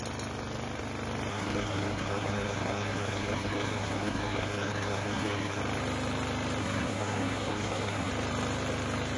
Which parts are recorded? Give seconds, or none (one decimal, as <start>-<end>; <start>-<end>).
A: 0.0-1.3; 5.6-6.6; 8.1-9.2